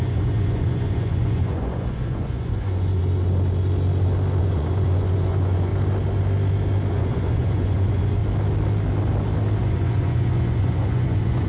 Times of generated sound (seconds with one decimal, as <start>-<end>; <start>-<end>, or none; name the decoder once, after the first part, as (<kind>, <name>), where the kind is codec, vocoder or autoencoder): 0.0-3.0 (vocoder, Vocos); 4.4-5.7; 6.9-8.2; 9.6-11.5